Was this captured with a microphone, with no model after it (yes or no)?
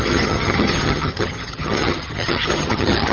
no